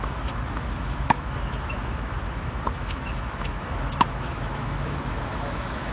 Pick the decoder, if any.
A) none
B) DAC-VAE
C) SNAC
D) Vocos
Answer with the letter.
B